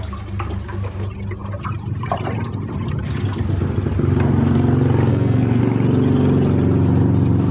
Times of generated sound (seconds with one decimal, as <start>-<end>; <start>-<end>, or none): 5.1-5.6